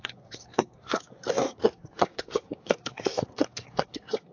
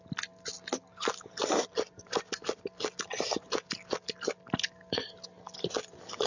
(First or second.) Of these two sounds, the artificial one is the first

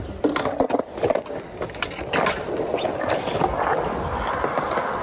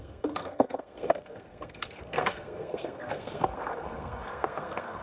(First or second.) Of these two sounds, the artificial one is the second